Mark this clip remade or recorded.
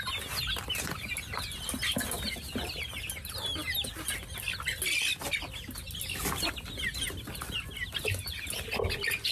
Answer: recorded